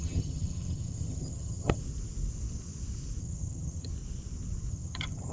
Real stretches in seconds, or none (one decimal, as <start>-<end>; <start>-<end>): 1.8-3.2; 3.9-4.7